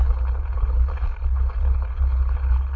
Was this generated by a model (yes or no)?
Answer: yes